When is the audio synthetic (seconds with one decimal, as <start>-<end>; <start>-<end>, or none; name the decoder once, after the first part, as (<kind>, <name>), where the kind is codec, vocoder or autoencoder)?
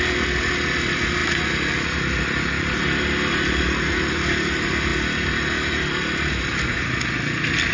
none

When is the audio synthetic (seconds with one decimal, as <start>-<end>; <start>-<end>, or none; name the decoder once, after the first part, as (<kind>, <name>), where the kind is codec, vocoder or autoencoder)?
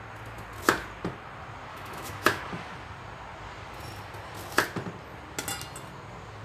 1.7-2.4 (autoencoder, DAC-VAE)